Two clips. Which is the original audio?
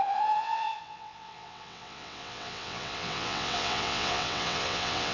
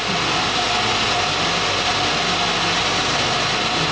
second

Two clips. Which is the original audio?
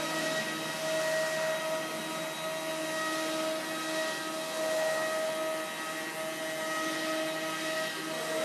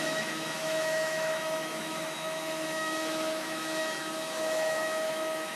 first